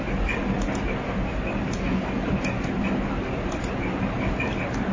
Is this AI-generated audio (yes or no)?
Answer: no